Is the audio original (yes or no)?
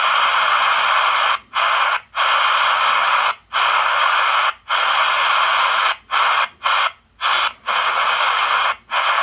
yes